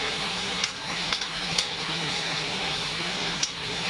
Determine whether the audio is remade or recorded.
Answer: remade